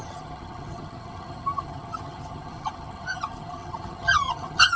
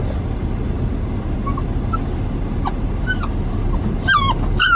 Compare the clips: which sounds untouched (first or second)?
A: second